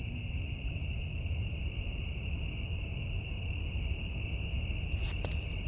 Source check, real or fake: real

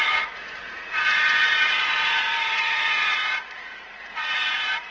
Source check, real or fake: fake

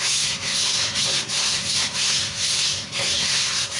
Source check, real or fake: fake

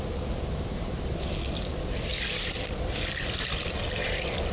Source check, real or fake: real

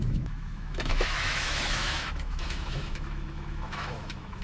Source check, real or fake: fake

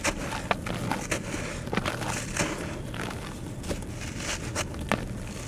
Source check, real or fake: real